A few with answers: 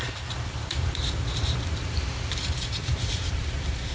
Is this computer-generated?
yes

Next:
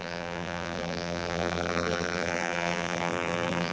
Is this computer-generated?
yes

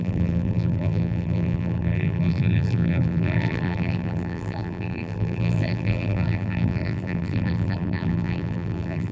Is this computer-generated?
yes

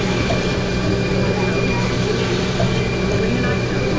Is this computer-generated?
no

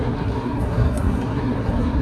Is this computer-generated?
yes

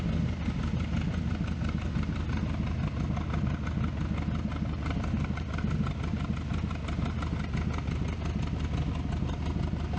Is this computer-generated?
no